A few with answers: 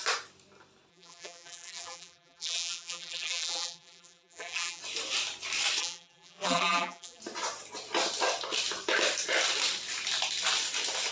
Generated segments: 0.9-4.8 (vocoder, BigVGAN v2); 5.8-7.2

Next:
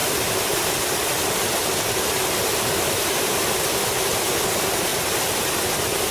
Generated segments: none